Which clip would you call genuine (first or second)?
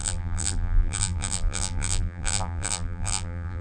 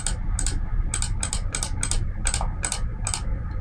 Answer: second